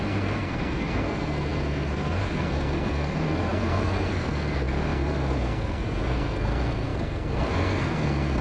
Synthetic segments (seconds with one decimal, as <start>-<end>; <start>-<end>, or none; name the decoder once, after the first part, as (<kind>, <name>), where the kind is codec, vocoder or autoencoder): 0.0-8.4 (codec, SNAC)